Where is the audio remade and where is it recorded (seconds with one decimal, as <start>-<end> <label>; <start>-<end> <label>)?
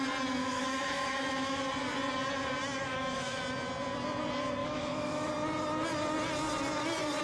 0.0-0.4 recorded; 0.4-1.6 remade; 1.6-2.8 recorded; 2.8-3.4 remade; 3.4-4.6 recorded; 4.6-5.3 remade; 5.3-7.2 recorded